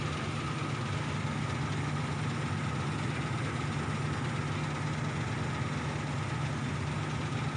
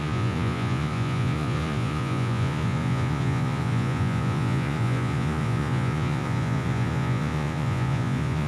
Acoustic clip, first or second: first